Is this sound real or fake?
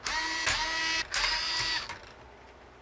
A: real